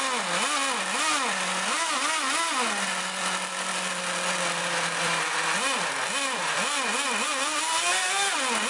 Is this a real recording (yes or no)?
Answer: yes